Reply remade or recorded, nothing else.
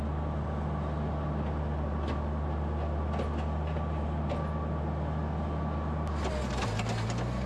recorded